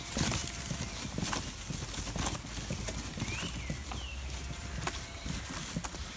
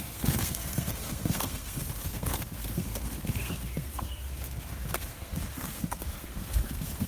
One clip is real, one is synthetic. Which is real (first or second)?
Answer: first